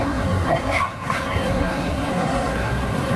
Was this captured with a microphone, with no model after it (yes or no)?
no